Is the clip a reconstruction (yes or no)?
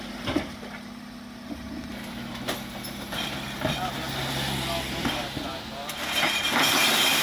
no